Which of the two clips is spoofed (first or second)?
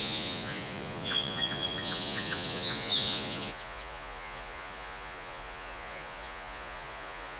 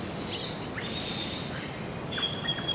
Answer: first